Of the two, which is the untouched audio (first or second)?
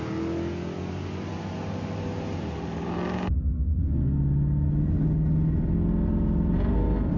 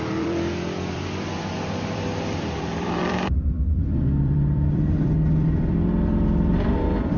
first